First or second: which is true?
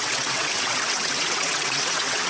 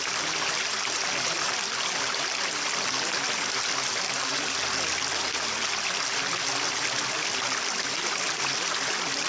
second